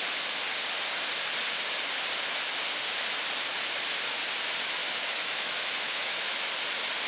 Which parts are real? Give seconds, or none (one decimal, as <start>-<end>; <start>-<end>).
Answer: 0.0-4.8; 6.5-7.1